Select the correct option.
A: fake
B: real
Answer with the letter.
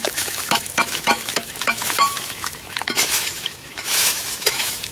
A